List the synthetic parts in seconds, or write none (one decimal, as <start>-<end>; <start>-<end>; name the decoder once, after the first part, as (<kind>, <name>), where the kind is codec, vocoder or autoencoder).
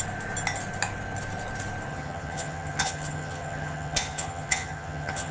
1.9-5.3 (vocoder, HiFi-GAN)